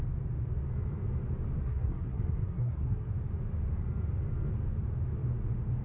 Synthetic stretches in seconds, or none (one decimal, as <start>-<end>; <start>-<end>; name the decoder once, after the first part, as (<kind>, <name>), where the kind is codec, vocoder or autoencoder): 1.6-3.1 (codec, SNAC)